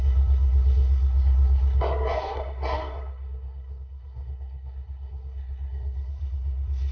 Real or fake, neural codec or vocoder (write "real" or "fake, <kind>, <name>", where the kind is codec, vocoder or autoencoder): fake, codec, SNAC